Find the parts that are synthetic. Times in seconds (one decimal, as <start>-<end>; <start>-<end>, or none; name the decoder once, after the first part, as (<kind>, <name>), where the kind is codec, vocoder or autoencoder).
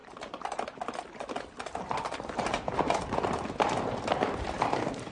none